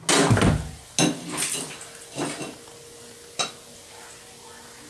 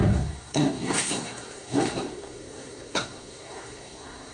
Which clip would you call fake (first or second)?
second